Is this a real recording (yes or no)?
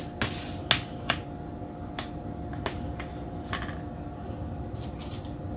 yes